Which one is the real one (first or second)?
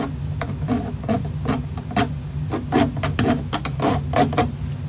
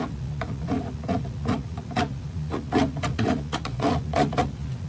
first